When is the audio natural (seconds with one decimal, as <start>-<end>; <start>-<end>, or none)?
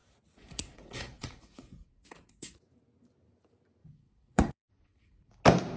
2.6-3.8; 5.3-5.8